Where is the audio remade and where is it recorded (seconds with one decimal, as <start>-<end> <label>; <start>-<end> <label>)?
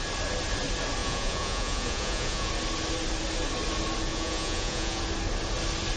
0.0-1.0 recorded; 1.0-2.5 remade; 2.5-4.1 recorded; 4.1-5.0 remade; 5.0-6.0 recorded